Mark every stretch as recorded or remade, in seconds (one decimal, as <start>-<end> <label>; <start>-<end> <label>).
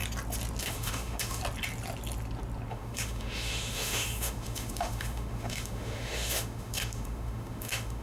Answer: 0.0-0.6 recorded; 0.6-1.4 remade; 1.4-2.7 recorded; 2.7-8.0 remade